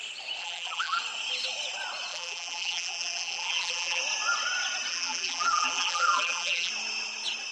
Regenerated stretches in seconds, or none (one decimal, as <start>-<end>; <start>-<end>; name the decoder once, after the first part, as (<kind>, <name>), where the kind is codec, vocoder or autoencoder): 0.4-1.0 (vocoder, BigVGAN v2); 2.1-4.0; 4.9-6.7